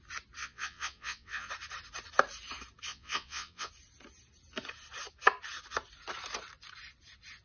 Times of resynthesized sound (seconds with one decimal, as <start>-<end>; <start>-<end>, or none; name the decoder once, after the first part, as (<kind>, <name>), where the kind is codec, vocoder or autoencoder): 0.4-1.5 (vocoder, WaveNeXt); 2.9-3.7